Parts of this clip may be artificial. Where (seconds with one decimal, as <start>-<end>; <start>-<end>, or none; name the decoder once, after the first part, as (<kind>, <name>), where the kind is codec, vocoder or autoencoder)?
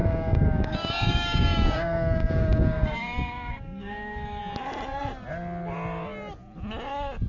0.0-4.4 (codec, DAC)